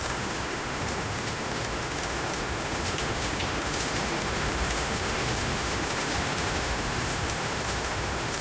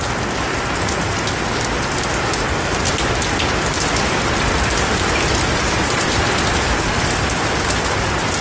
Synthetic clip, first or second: first